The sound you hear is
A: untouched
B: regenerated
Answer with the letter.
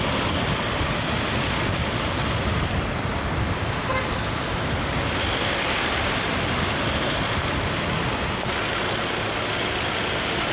A